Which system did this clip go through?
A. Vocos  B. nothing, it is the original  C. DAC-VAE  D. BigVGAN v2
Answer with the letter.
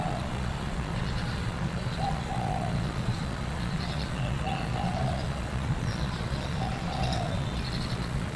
A